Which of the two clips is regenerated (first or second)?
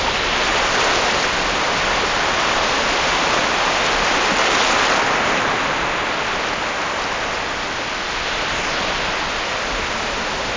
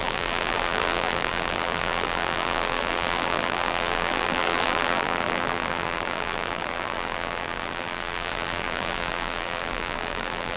second